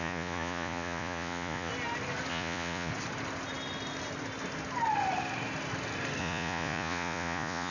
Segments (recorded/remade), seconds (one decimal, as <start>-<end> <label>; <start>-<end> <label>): 0.0-1.7 remade; 1.7-2.3 recorded; 2.3-2.9 remade; 2.9-6.2 recorded; 6.2-7.7 remade